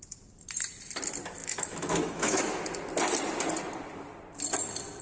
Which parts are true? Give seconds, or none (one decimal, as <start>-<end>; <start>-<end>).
0.0-1.4; 2.4-5.0